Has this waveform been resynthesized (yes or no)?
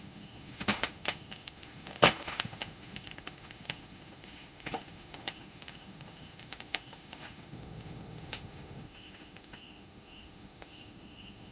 yes